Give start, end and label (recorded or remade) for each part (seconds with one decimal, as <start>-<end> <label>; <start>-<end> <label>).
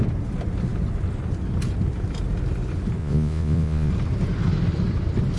0.0-3.0 recorded; 3.0-3.9 remade; 3.9-5.4 recorded